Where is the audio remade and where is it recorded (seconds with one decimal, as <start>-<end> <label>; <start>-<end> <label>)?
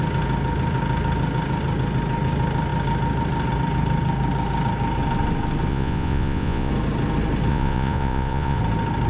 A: 0.0-5.7 recorded; 5.7-6.7 remade; 6.7-7.5 recorded; 7.5-8.6 remade; 8.6-9.1 recorded